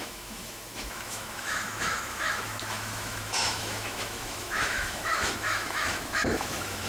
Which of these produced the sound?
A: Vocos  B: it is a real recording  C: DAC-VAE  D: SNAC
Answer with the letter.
C